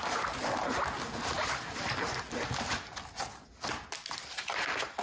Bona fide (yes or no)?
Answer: yes